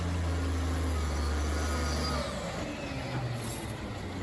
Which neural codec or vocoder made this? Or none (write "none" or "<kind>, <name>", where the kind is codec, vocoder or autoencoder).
none